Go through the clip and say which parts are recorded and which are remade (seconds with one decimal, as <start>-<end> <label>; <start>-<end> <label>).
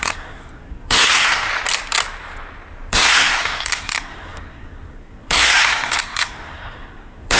0.0-1.5 remade; 1.5-2.9 recorded; 2.9-7.4 remade